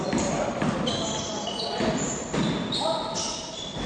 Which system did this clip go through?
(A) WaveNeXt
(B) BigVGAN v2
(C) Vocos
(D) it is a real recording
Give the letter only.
D